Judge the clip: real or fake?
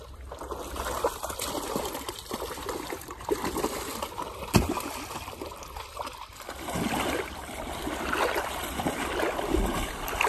real